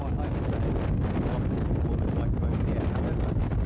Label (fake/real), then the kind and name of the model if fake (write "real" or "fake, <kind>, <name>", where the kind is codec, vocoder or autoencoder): real